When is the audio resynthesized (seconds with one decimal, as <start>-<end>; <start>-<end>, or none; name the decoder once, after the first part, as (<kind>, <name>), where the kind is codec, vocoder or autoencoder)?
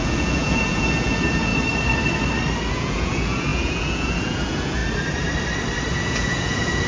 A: 0.0-1.5 (vocoder, Vocos); 2.7-4.8; 5.9-6.9